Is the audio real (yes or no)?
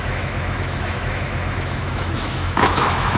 no